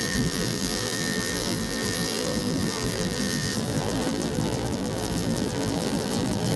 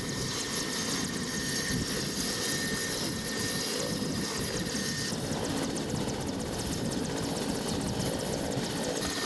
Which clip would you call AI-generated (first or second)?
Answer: first